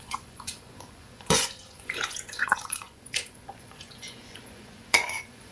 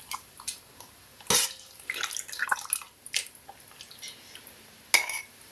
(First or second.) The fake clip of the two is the first